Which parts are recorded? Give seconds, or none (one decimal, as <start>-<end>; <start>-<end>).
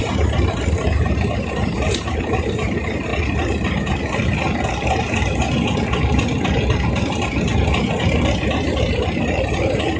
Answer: 3.1-3.7; 7.5-8.0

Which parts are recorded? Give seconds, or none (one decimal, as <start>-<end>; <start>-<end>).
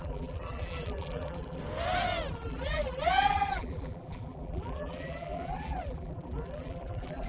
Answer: 1.6-2.3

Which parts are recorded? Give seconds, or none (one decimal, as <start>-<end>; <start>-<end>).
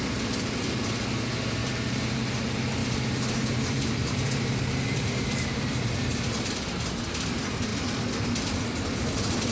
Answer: 0.0-1.6; 2.2-2.8; 5.8-9.5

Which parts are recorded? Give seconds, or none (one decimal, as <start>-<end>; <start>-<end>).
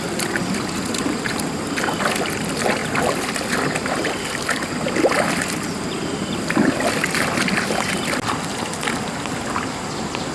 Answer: 0.0-2.8; 3.3-10.3